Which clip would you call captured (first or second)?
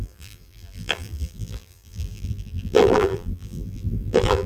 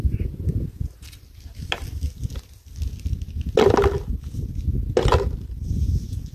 second